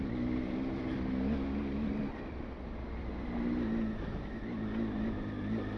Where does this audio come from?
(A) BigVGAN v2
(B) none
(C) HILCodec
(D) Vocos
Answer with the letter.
B